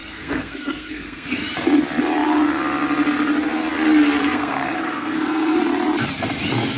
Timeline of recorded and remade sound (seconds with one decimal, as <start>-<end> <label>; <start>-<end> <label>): 0.0-1.4 remade; 1.4-4.2 recorded; 4.2-5.6 remade; 5.6-6.8 recorded

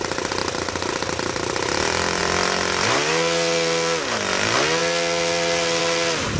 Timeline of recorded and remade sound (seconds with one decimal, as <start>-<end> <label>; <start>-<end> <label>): 0.0-0.4 recorded; 0.4-0.9 remade; 0.9-2.2 recorded; 2.2-3.1 remade; 3.1-6.4 recorded

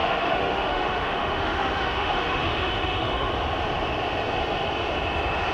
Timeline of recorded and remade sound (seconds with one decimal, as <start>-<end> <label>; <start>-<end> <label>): 0.0-3.3 remade; 3.3-5.5 recorded